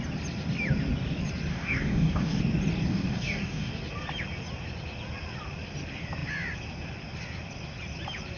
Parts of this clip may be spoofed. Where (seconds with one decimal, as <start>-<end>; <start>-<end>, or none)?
1.5-2.4; 2.9-3.7